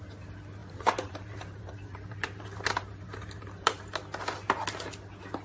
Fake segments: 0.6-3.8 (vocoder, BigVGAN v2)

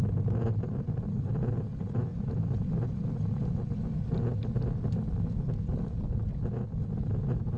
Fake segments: none

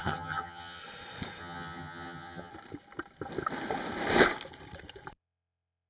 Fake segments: 0.0-0.8 (vocoder, HiFi-GAN); 1.4-2.5

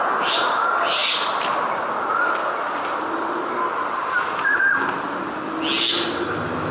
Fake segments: none

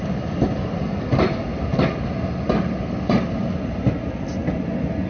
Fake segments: none

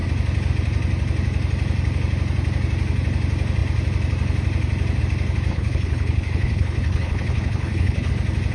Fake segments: 5.5-8.1 (codec, HILCodec)